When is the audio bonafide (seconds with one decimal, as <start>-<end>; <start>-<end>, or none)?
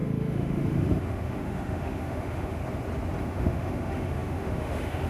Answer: 2.6-3.2